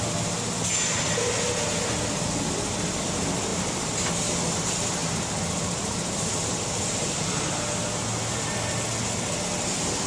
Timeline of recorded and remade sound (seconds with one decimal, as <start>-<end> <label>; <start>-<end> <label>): 0.0-10.1 recorded